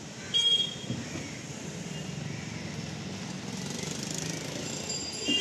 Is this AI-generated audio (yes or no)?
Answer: no